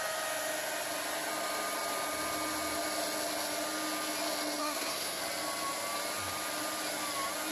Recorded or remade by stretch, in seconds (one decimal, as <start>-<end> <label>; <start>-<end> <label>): 0.0-4.6 recorded; 4.6-5.2 remade; 5.2-7.5 recorded